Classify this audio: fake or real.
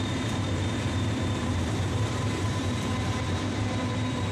fake